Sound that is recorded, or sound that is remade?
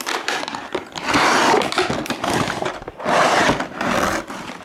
recorded